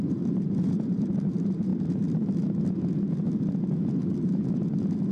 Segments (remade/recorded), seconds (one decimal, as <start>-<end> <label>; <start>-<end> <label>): 0.0-1.7 remade; 1.7-5.1 recorded

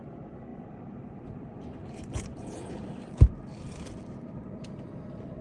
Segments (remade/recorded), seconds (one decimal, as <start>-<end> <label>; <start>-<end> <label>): 0.0-0.5 remade; 0.5-1.4 recorded; 1.4-1.8 remade; 1.8-2.8 recorded; 2.8-5.4 remade